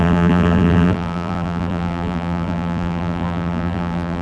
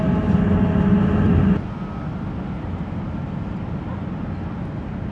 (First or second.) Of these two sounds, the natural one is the second